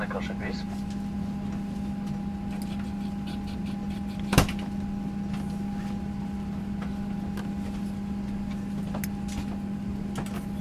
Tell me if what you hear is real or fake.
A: real